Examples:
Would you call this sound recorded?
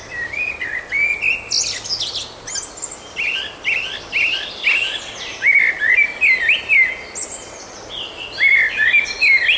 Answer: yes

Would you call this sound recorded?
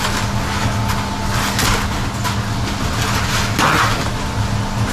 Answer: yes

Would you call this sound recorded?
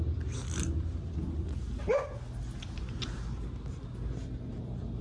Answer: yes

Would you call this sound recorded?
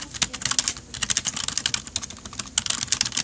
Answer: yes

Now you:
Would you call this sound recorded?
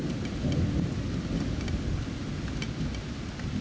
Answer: yes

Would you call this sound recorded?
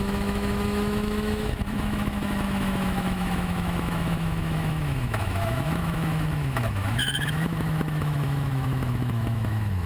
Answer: no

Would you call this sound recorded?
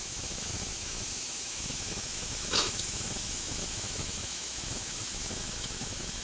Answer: no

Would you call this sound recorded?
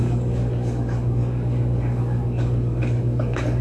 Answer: no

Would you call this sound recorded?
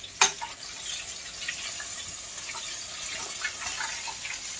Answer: yes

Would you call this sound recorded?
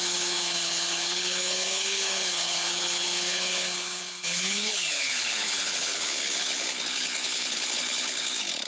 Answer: no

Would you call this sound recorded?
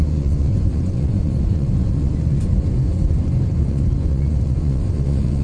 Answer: no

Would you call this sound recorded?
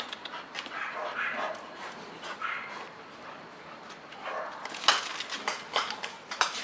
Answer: yes